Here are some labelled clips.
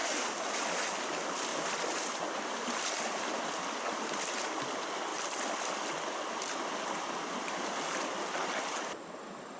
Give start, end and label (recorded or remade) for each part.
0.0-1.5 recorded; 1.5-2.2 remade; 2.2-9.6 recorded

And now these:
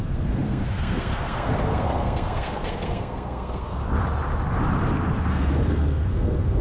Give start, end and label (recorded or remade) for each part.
0.0-3.8 remade; 3.8-5.3 recorded; 5.3-6.6 remade

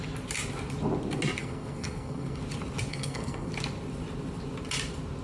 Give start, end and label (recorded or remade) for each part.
0.0-1.4 recorded; 1.4-2.4 remade; 2.4-2.9 recorded; 2.9-3.5 remade; 3.5-5.2 recorded

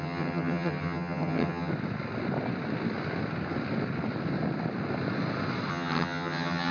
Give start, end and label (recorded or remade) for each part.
0.0-1.7 remade; 1.7-5.7 recorded; 5.7-6.7 remade

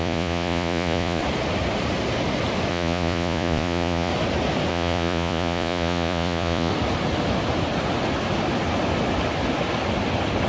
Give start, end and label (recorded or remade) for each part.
0.0-1.2 remade; 1.2-2.7 recorded; 2.7-4.1 remade; 4.1-4.7 recorded; 4.7-6.7 remade; 6.7-10.5 recorded

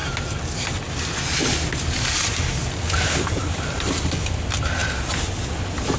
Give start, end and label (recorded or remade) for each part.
0.0-3.4 recorded; 3.4-6.0 remade

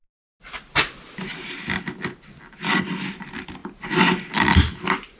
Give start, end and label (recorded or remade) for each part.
0.0-5.2 recorded